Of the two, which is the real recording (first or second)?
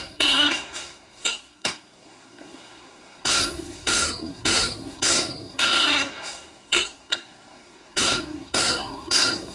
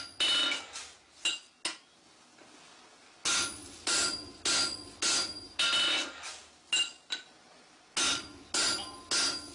second